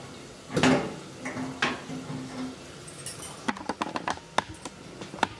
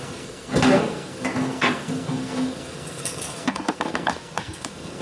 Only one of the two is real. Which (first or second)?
first